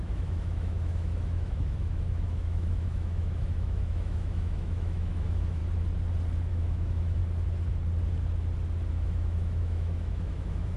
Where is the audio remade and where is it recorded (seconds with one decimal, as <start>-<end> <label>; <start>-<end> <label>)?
0.0-5.6 remade; 5.6-6.5 recorded; 6.5-7.2 remade; 7.2-8.9 recorded; 8.9-10.8 remade